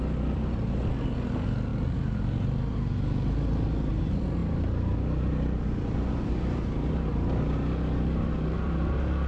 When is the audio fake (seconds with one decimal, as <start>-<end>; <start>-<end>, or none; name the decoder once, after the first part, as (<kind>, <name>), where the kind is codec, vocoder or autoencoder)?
none